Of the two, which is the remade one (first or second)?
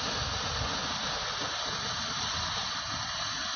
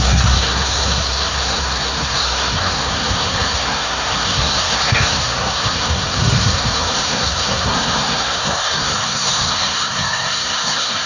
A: second